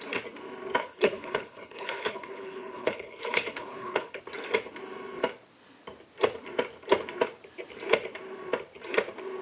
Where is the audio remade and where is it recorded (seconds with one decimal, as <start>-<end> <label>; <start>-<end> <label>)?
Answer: 0.0-0.8 recorded; 0.8-4.2 remade; 4.2-9.4 recorded